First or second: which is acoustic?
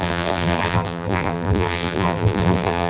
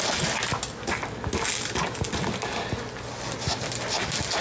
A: second